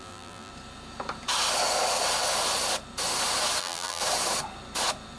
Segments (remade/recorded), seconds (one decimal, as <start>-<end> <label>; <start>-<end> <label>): 0.0-0.5 remade; 0.5-3.6 recorded; 3.6-4.0 remade; 4.0-5.2 recorded